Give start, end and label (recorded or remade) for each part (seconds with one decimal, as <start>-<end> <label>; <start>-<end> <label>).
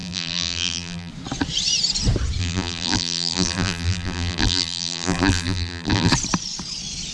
0.0-1.1 remade; 1.1-2.4 recorded; 2.4-6.1 remade; 6.1-7.1 recorded